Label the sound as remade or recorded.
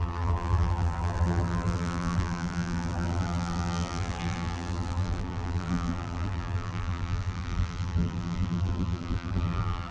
remade